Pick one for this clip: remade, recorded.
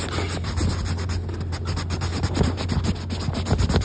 recorded